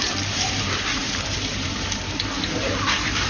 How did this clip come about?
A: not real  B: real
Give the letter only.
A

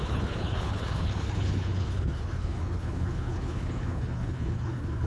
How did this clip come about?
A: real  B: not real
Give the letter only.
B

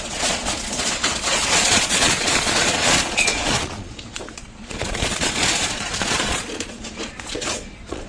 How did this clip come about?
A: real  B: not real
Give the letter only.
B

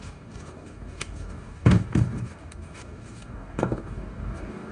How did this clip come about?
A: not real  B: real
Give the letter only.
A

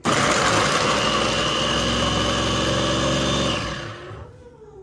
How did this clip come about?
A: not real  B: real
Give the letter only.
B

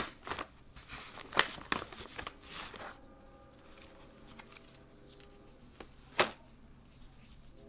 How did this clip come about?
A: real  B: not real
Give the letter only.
A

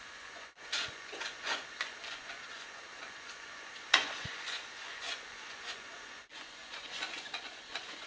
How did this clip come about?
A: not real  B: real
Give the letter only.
A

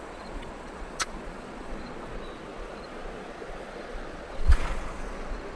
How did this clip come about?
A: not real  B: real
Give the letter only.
A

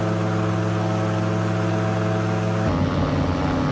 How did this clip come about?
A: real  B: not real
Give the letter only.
A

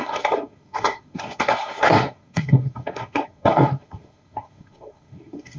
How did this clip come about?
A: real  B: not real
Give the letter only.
B